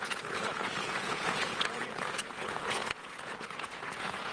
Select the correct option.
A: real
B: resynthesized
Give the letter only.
B